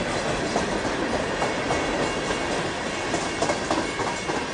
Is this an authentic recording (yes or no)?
yes